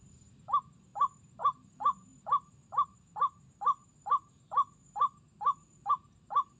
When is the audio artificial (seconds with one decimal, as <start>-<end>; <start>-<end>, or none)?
none